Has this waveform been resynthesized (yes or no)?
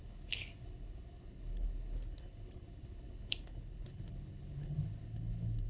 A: yes